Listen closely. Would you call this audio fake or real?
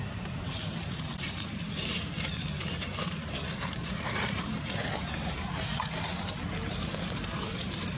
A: fake